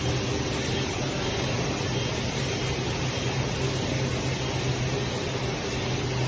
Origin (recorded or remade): recorded